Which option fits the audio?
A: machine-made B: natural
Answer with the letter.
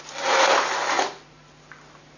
B